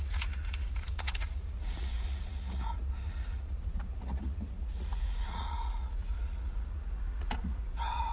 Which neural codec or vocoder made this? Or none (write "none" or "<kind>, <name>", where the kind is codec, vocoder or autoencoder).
vocoder, Vocos